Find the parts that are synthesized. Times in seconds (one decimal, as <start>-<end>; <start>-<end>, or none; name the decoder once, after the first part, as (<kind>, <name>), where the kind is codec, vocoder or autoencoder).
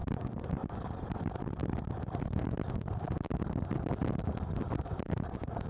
0.0-3.4 (vocoder, BigVGAN v2); 4.7-5.7